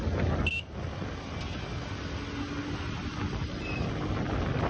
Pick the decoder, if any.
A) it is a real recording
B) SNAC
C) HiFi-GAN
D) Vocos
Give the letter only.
A